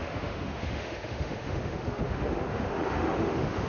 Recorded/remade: remade